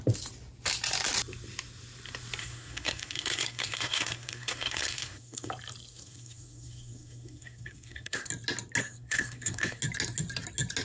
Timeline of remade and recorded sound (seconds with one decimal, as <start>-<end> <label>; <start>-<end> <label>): 0.0-2.4 recorded; 2.4-5.5 remade; 5.5-5.9 recorded; 5.9-8.3 remade; 8.3-8.8 recorded; 8.8-9.8 remade; 9.8-10.8 recorded